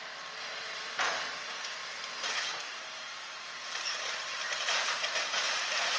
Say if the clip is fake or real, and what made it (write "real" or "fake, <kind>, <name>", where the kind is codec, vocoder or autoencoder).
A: fake, vocoder, BigVGAN v2